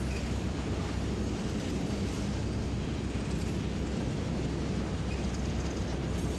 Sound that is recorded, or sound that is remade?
recorded